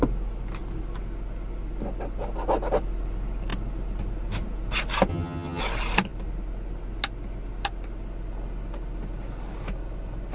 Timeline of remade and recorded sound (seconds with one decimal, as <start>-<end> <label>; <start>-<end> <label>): 0.0-5.1 recorded; 5.1-5.6 remade; 5.6-10.3 recorded

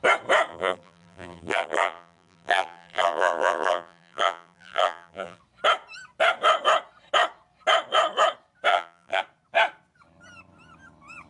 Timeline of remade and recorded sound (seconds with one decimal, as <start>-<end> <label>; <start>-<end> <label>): 0.0-0.5 recorded; 0.5-5.4 remade; 5.4-8.7 recorded; 8.7-9.2 remade; 9.2-11.3 recorded